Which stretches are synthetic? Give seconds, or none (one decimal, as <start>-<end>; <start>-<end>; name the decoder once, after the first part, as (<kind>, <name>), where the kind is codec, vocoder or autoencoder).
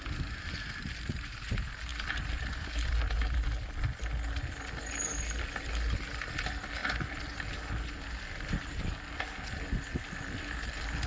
none